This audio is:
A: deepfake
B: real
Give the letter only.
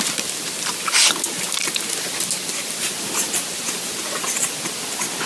B